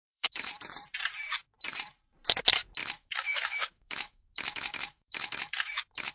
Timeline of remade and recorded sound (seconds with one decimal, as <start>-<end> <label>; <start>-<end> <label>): 0.0-0.5 remade; 0.5-2.8 recorded; 2.8-6.1 remade